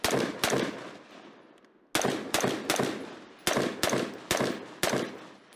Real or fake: real